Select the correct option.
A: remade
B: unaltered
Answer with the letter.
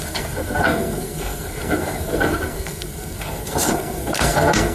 A